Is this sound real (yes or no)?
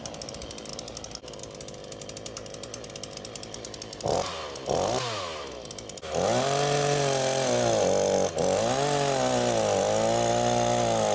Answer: yes